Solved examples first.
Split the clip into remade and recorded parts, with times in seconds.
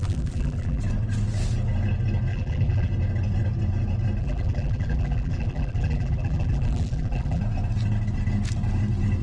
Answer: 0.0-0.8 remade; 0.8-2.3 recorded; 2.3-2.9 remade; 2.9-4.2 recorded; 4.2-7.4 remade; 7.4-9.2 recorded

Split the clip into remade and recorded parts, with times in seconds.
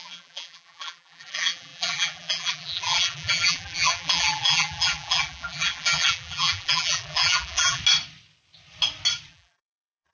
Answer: 0.0-7.8 remade; 7.8-9.3 recorded; 9.3-10.1 remade